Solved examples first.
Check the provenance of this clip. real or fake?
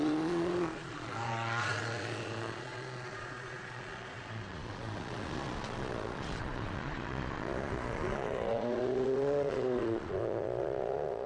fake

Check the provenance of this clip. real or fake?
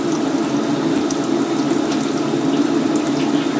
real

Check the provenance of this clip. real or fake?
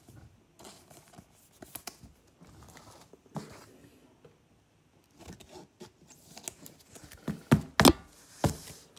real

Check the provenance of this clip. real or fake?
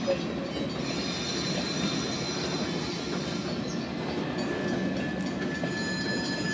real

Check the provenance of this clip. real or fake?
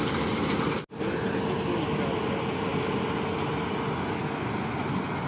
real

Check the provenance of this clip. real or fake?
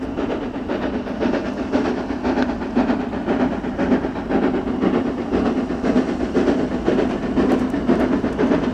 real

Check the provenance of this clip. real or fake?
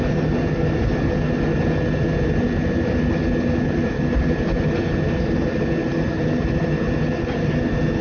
real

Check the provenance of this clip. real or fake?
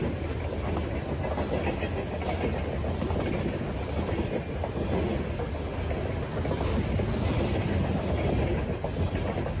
real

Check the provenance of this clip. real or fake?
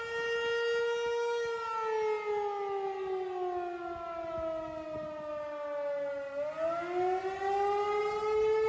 real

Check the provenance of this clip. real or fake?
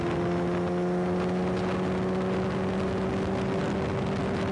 real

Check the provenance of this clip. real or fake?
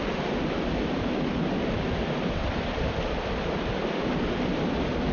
real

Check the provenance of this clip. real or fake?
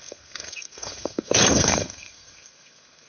fake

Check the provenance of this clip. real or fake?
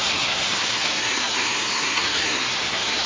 fake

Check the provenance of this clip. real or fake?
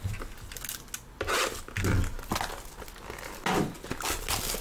real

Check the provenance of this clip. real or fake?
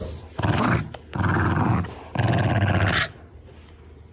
real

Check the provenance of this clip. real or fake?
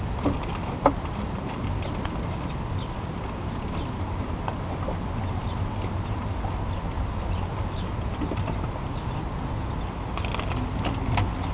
real